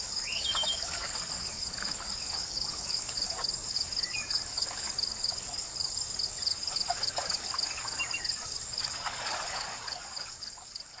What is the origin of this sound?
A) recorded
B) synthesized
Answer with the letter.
B